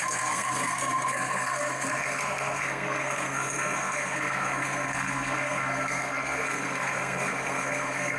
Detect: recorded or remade remade